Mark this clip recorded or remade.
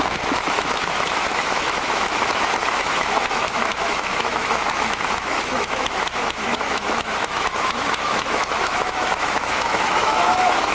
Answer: remade